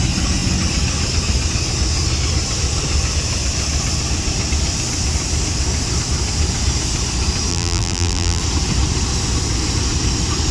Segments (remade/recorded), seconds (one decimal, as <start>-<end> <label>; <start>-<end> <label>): 0.0-7.5 recorded; 7.5-8.4 remade; 8.4-10.5 recorded